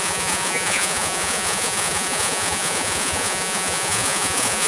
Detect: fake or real fake